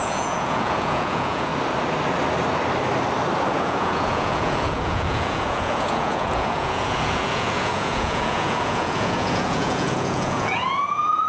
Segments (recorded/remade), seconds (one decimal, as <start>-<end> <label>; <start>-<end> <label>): 0.0-1.5 remade; 1.5-3.5 recorded; 3.5-11.3 remade